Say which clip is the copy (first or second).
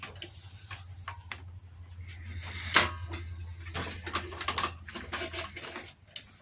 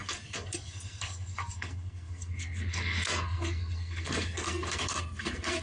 second